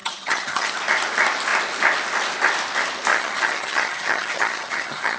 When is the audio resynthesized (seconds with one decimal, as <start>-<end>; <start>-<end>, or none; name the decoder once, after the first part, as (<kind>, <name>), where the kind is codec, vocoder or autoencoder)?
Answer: 0.0-0.7 (vocoder, HiFi-GAN); 3.1-5.2